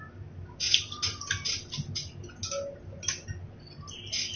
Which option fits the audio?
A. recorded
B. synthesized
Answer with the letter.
A